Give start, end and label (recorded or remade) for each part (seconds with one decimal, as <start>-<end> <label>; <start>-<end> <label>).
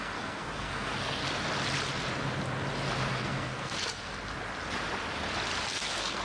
0.0-1.2 remade; 1.2-3.1 recorded; 3.1-4.1 remade; 4.1-5.7 recorded; 5.7-6.2 remade